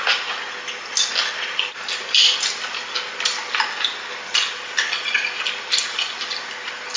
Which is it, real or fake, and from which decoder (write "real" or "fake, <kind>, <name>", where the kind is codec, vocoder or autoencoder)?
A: real